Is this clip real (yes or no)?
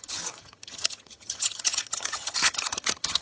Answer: no